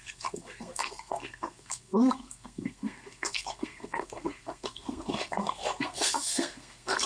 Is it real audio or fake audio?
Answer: fake